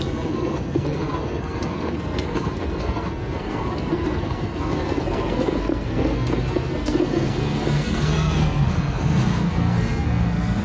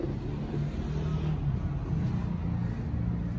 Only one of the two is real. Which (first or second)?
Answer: second